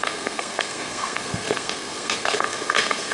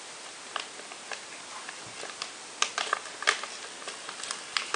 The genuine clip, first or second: second